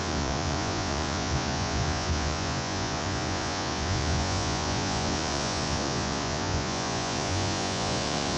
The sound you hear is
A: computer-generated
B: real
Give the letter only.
A